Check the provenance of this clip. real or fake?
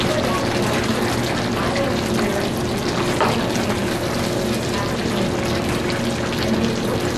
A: real